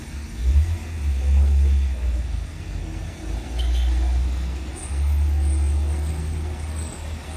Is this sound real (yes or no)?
no